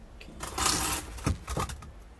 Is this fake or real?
real